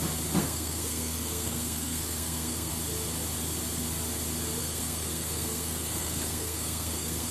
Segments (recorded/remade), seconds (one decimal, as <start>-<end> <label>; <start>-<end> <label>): 0.0-0.4 recorded; 0.4-2.7 remade; 2.7-4.6 recorded; 4.6-7.3 remade